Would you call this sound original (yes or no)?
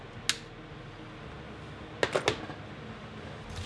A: yes